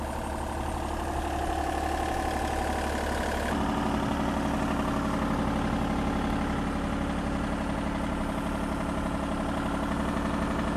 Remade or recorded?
recorded